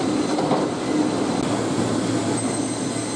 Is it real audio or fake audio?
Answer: real